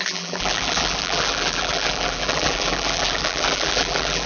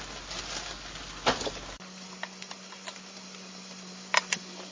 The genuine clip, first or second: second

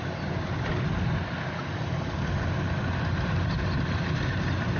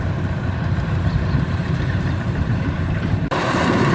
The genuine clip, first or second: first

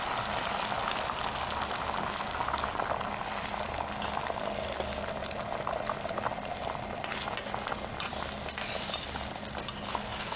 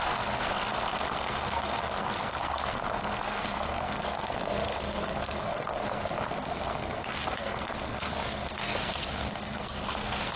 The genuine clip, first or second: first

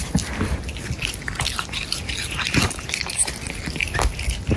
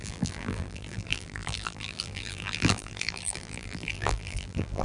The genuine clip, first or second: first